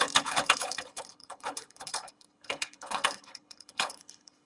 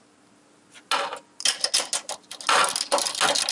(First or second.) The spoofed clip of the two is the first